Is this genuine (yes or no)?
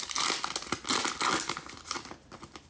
yes